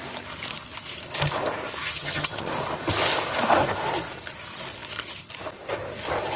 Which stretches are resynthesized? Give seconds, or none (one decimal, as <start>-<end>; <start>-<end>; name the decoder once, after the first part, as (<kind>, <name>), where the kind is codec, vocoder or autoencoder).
1.8-2.5 (vocoder, HiFi-GAN)